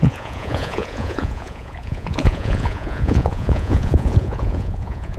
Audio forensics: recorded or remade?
remade